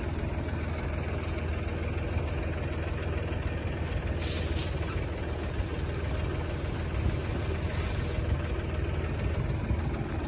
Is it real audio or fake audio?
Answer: real